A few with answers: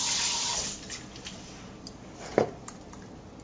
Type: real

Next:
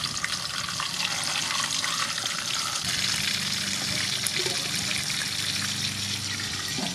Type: real